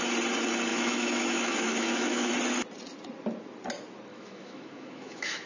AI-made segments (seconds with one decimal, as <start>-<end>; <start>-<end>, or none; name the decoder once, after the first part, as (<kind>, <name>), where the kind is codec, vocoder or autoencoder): 0.7-2.3 (autoencoder, DAC-VAE); 4.1-5.5